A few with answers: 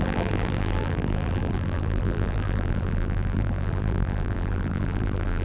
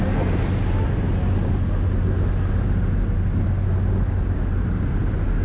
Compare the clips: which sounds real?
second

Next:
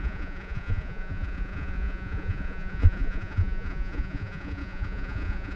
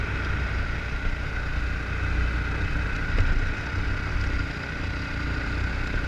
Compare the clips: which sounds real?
second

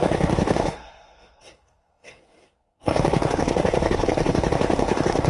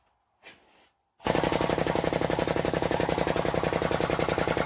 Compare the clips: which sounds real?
second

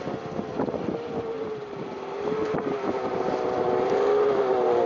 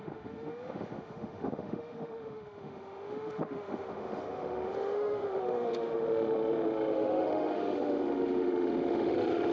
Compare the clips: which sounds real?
first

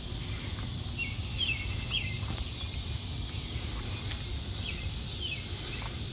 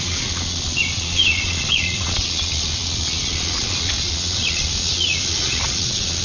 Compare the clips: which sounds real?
first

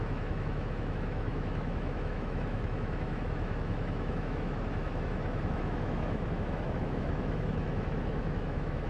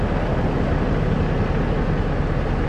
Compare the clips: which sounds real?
second